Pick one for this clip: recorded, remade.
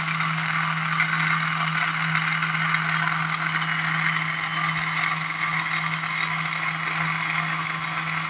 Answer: recorded